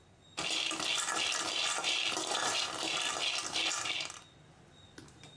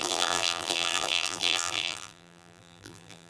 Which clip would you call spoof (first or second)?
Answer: second